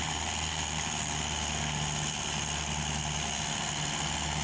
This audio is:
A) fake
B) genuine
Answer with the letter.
B